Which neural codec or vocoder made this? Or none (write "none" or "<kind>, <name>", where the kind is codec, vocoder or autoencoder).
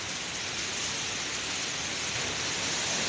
none